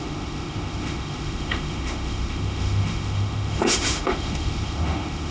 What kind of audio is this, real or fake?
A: fake